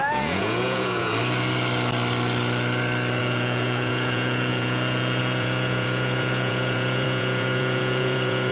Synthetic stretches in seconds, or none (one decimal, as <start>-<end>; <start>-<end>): 0.0-1.1; 3.2-8.5